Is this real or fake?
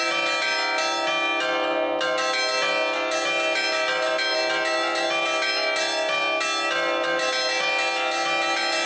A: real